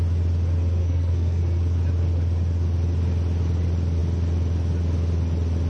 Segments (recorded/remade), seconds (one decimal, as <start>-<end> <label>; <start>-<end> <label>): 0.0-0.8 recorded; 0.8-1.4 remade; 1.4-5.7 recorded